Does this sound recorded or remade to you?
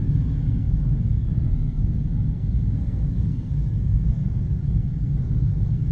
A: remade